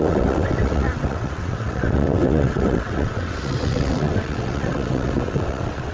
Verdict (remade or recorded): remade